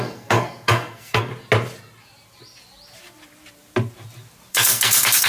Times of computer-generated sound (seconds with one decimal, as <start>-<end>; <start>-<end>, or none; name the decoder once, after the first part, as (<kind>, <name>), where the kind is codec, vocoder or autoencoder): 0.0-1.3 (codec, SNAC); 4.5-5.3